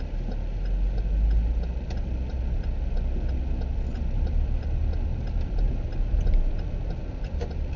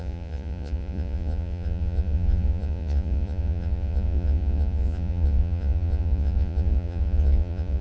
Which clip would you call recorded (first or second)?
first